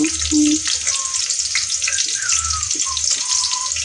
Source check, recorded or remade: recorded